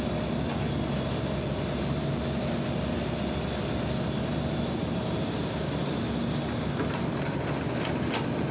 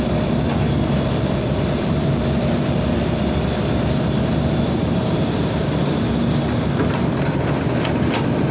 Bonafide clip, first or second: first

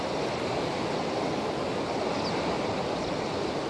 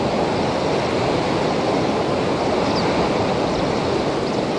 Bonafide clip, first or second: second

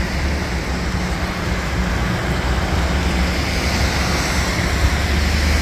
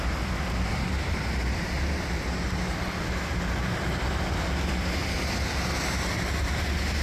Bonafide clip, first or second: first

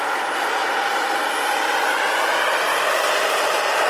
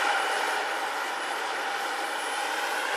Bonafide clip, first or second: first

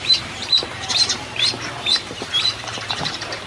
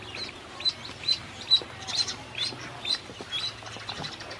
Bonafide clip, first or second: second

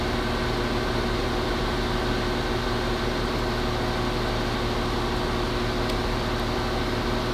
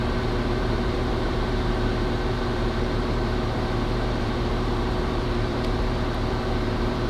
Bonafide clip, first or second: first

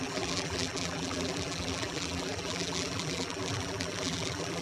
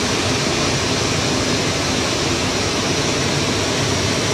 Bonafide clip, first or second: second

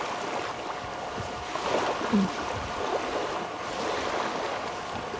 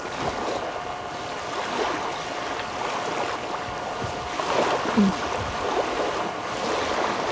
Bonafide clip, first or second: second